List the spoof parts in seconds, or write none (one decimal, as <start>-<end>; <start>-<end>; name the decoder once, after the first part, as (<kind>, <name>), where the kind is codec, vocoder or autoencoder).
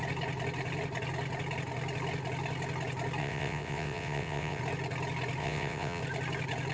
3.2-4.6 (vocoder, WaveNeXt); 5.4-6.0